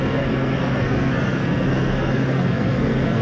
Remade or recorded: remade